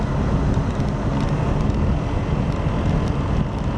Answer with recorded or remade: recorded